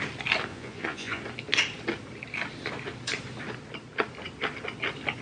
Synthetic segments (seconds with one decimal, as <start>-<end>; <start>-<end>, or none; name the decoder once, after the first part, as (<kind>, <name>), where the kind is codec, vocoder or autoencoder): 0.5-1.2 (vocoder, Vocos)